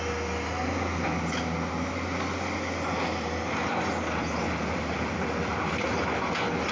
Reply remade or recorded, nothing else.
recorded